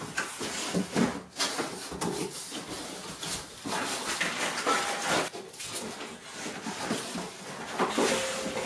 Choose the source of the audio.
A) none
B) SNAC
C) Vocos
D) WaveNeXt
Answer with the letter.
A